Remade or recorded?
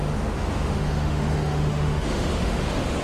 remade